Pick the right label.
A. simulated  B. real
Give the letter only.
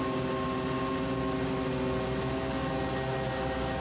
B